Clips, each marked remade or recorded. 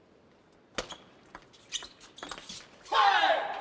recorded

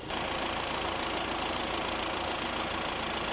recorded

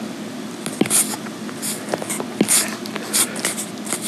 recorded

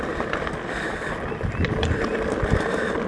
recorded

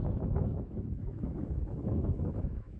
remade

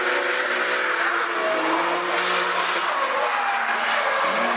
recorded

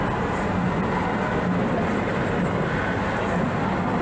recorded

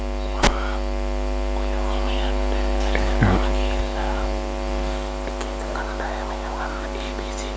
recorded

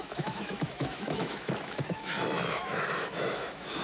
remade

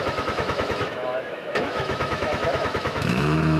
remade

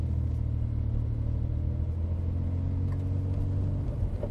recorded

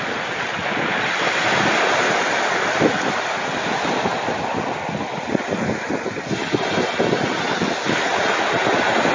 recorded